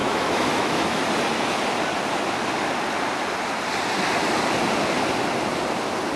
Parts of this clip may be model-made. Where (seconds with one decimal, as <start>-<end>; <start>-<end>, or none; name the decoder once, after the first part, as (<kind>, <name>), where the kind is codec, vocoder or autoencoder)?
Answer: 0.0-1.0 (autoencoder, DAC-VAE)